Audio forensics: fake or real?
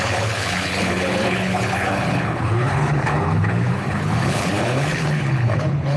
fake